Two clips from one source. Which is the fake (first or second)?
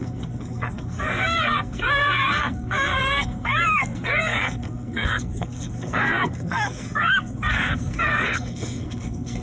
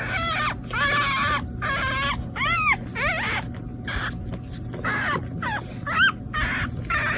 first